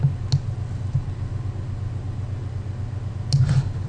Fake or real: real